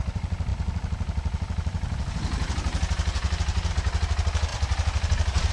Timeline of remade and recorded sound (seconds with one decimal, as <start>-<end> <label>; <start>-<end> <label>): 0.0-5.5 remade